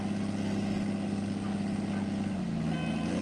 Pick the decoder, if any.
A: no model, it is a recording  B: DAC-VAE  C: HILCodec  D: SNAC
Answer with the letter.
A